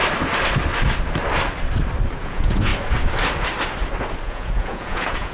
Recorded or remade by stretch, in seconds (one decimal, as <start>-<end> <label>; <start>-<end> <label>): 0.0-2.2 recorded; 2.2-2.7 remade; 2.7-4.2 recorded; 4.2-5.3 remade